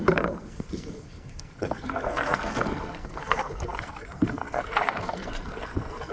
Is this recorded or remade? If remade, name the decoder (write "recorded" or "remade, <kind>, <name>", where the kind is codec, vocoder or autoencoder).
remade, codec, SNAC